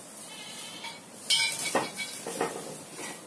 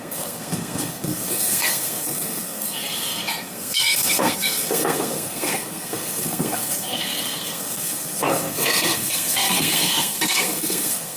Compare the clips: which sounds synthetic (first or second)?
second